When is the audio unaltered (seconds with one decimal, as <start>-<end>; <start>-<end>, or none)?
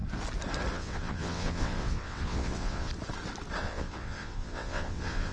0.0-0.7; 2.9-3.6